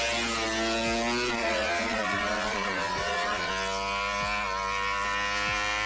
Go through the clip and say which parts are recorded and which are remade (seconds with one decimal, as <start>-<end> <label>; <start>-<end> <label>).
0.0-1.3 recorded; 1.3-3.5 remade; 3.5-5.9 recorded